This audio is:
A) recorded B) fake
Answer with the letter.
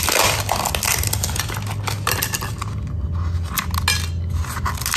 A